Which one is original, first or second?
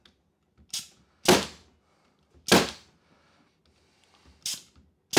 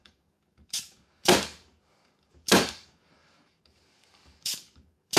first